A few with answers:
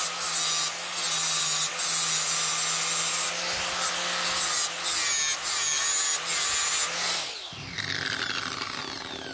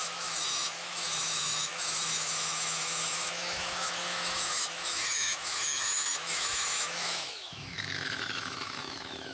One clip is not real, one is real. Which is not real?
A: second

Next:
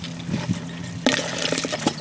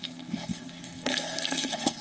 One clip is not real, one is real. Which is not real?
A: second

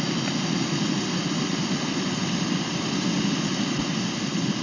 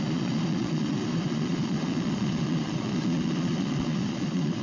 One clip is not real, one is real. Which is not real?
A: second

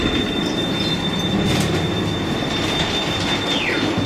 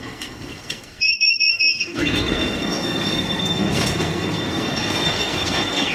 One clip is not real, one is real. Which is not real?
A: second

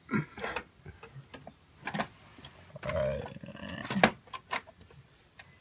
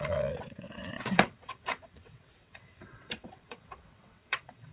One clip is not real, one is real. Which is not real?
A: second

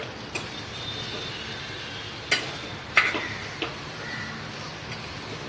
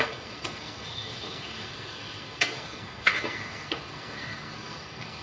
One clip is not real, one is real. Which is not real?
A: second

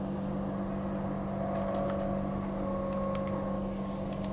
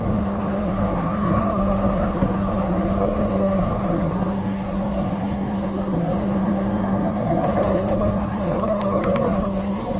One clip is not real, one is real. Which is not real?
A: second